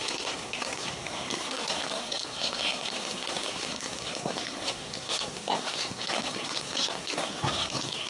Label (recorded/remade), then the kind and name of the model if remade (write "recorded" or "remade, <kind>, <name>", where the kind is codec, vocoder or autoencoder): remade, codec, SNAC